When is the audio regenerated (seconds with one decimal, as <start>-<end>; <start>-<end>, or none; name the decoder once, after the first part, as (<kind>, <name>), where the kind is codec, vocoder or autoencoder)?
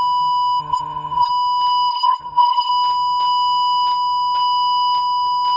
0.6-1.3 (codec, HILCodec); 1.9-2.7